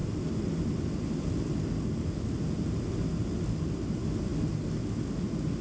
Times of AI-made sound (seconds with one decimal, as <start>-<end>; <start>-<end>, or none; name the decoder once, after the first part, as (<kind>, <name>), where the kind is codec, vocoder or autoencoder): none